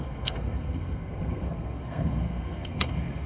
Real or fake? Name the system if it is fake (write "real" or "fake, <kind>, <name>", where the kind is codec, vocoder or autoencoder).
fake, codec, SNAC